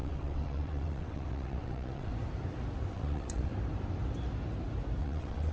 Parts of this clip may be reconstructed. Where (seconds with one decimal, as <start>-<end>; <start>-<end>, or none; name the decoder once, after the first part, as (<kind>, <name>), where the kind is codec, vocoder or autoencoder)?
0.0-2.1 (vocoder, WaveNeXt); 2.9-3.5; 5.0-5.5